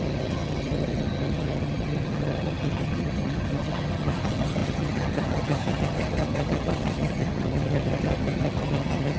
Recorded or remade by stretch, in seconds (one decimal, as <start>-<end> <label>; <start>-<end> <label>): 0.0-9.2 remade